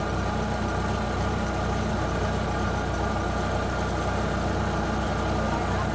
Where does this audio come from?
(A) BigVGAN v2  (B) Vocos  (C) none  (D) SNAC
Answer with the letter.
C